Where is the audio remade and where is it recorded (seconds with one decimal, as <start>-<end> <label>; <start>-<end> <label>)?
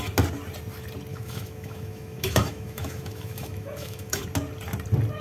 0.0-1.1 recorded; 1.1-4.2 remade; 4.2-5.2 recorded